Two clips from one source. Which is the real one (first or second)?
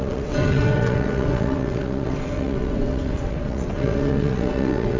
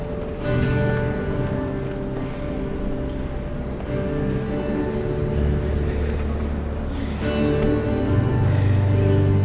second